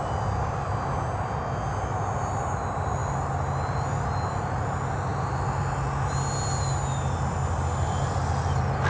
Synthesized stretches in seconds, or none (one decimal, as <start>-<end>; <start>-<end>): none